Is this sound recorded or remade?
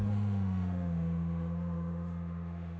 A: remade